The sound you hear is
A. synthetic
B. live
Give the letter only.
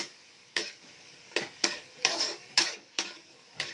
A